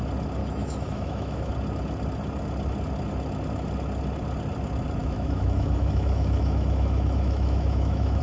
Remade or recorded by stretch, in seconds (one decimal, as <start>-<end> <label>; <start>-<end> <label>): 0.0-0.4 recorded; 0.4-1.5 remade; 1.5-5.0 recorded; 5.0-8.2 remade